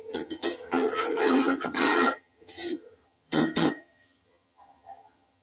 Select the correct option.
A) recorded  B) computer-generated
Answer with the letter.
B